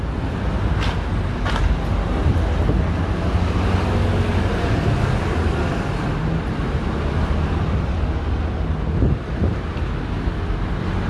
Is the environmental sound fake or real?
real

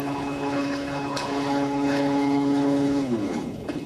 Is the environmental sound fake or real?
fake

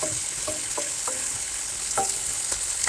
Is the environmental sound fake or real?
fake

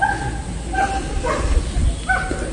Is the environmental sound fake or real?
real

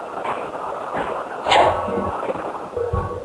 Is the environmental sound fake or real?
real